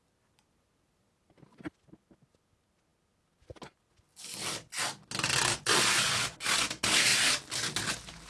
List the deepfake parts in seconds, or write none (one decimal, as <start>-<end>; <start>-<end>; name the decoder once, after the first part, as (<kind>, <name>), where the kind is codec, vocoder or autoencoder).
none